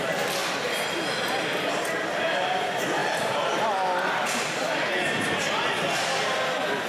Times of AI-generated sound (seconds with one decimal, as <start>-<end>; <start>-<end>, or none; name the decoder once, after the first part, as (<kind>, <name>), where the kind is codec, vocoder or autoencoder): none